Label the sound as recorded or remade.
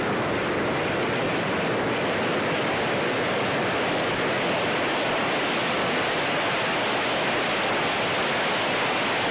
recorded